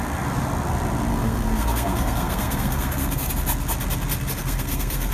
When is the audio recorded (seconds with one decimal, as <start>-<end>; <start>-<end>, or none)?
0.0-1.1; 3.3-4.4